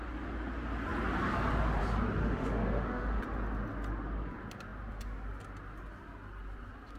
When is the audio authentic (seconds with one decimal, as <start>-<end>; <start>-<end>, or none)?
0.0-2.2; 3.2-7.0